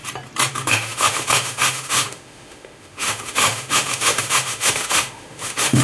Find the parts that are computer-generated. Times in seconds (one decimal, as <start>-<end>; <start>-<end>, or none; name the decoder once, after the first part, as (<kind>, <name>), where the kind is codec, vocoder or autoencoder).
0.5-5.8 (autoencoder, DAC-VAE)